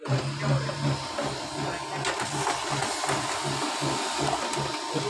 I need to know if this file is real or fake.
real